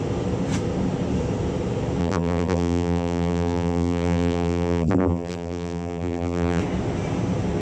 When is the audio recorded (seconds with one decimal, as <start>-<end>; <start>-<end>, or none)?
0.0-2.0; 6.6-7.6